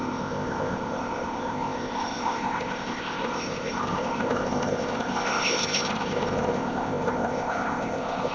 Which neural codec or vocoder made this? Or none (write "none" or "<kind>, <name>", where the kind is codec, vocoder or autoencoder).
codec, ZipCodec